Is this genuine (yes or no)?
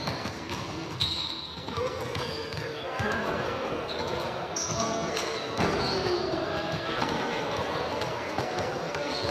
no